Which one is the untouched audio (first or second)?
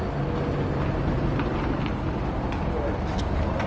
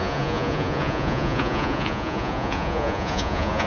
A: first